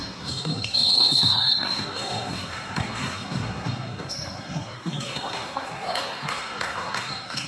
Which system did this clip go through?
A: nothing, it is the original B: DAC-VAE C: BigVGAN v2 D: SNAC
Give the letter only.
D